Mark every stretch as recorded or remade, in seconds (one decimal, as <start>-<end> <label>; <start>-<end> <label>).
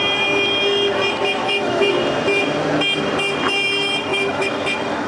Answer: 0.0-1.4 recorded; 1.4-1.9 remade; 1.9-4.1 recorded; 4.1-5.1 remade